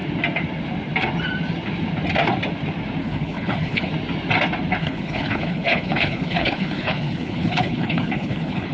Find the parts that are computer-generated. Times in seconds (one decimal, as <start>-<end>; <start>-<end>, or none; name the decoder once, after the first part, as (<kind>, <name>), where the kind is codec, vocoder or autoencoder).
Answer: 3.0-3.9 (codec, HILCodec); 4.8-8.7